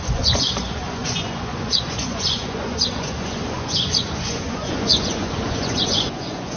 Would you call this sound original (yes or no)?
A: no